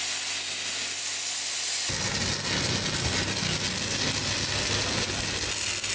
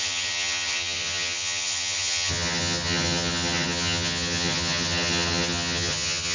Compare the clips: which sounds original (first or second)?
first